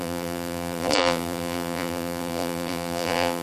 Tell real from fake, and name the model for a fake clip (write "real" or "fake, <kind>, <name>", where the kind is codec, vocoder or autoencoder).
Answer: fake, vocoder, BigVGAN v2